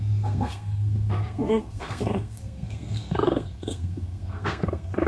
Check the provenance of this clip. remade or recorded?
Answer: remade